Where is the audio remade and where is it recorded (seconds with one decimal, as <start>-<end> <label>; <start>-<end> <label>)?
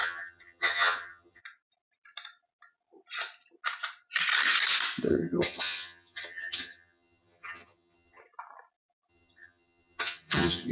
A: 0.0-1.4 remade; 1.4-5.1 recorded; 5.1-8.2 remade; 8.2-9.1 recorded; 9.1-10.7 remade